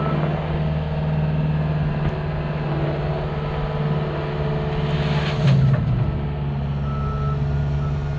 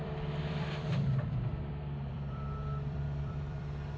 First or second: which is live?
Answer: first